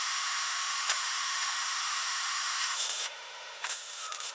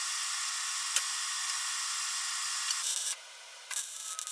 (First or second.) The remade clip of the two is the first